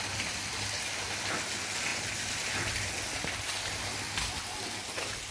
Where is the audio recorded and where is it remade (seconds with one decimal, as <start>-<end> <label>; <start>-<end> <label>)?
0.0-5.3 recorded